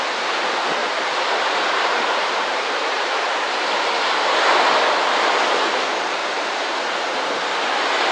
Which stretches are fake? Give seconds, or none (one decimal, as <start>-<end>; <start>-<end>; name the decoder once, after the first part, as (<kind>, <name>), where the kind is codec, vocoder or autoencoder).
0.8-3.5 (vocoder, BigVGAN v2); 6.2-7.4